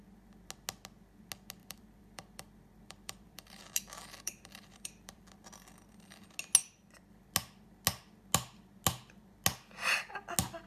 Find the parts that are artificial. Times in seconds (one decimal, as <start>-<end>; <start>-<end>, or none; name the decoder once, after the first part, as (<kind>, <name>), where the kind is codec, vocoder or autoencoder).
1.6-5.7 (vocoder, BigVGAN v2); 6.6-7.1